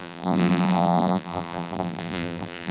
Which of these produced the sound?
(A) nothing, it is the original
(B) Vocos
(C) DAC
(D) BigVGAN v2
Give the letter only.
D